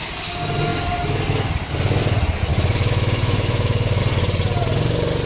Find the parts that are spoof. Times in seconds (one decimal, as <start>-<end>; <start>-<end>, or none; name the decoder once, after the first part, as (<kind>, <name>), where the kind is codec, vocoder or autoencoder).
2.5-4.0 (autoencoder, DAC-VAE)